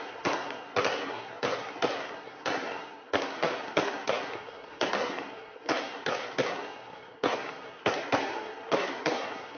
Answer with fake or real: fake